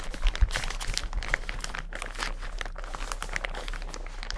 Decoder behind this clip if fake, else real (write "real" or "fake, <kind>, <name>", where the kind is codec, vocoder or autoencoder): real